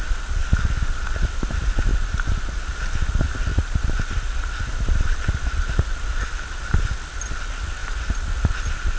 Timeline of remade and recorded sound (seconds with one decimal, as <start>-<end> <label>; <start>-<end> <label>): 0.0-3.5 recorded; 3.5-4.5 remade; 4.5-9.0 recorded